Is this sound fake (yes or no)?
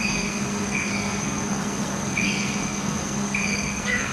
yes